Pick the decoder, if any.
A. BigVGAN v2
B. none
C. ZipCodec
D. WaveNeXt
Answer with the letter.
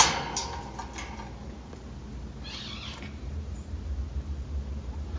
B